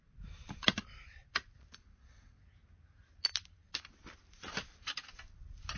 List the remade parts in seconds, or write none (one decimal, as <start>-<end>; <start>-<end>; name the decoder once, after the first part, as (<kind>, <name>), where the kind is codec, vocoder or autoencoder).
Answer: 1.8-2.4 (vocoder, WaveNeXt)